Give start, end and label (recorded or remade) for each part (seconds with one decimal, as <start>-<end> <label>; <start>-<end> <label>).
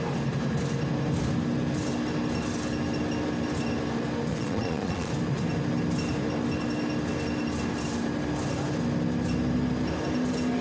0.0-4.3 recorded; 4.3-5.1 remade; 5.1-10.6 recorded